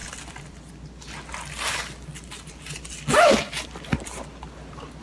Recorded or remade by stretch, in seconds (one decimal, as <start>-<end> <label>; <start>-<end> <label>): 0.0-0.6 remade; 0.6-5.0 recorded